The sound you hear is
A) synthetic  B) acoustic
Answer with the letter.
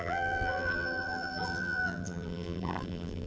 A